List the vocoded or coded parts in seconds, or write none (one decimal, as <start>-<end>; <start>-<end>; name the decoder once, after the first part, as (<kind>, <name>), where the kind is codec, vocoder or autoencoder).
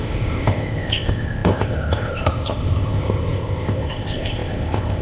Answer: 0.0-5.0 (codec, ZipCodec)